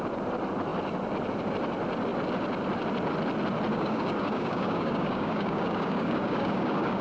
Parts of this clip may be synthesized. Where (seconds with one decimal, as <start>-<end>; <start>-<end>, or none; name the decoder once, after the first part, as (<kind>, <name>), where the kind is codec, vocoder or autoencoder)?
3.7-7.0 (codec, DAC)